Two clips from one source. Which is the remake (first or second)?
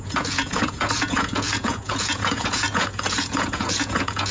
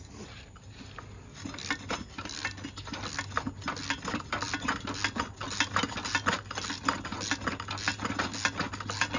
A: first